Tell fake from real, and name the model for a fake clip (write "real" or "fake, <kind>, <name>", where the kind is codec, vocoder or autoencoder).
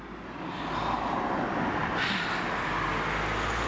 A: real